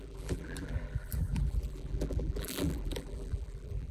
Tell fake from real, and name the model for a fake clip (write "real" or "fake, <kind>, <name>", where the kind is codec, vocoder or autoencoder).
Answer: fake, vocoder, BigVGAN v2